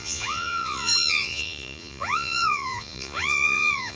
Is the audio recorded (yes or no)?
no